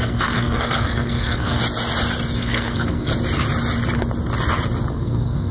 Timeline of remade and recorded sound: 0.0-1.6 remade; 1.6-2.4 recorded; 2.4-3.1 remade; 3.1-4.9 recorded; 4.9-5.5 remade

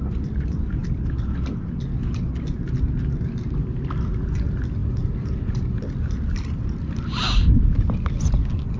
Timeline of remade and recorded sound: 0.0-8.8 recorded

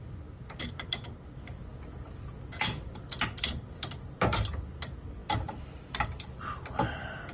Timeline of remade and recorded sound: 0.0-5.2 recorded; 5.2-6.3 remade; 6.3-7.3 recorded

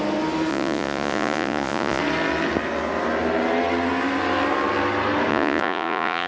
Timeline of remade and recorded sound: 0.0-0.5 recorded; 0.5-2.0 remade; 2.0-5.3 recorded; 5.3-6.3 remade